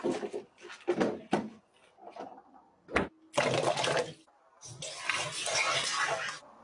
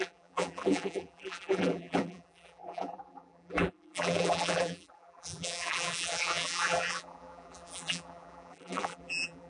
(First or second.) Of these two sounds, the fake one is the second